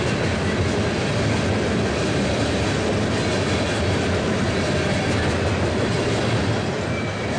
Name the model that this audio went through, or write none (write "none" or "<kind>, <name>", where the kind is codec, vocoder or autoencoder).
none